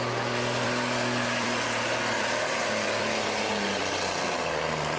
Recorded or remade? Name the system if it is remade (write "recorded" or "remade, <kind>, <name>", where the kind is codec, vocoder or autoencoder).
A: recorded